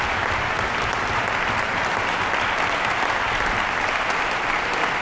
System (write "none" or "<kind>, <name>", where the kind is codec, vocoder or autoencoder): none